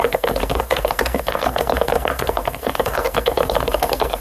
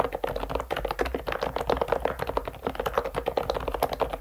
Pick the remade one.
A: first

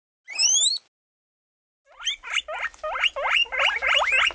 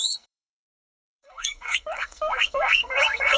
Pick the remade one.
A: second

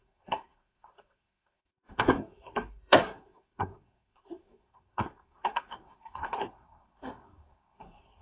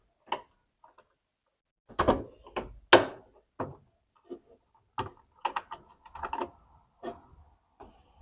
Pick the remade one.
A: first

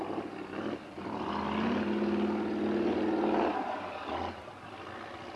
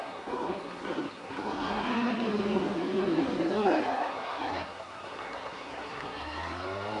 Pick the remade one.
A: second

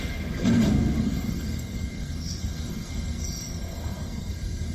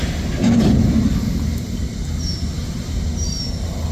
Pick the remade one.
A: first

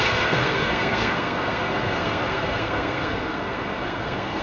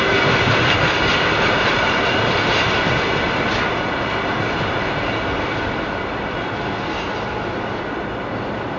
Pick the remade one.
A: first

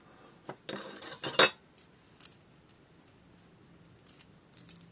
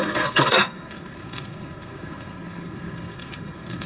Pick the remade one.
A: second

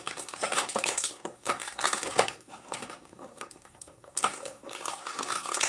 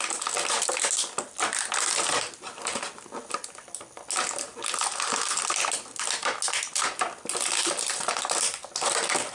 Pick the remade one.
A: first